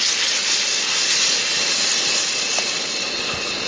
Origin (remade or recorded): recorded